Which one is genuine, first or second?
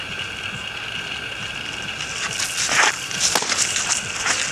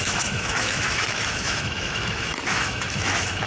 first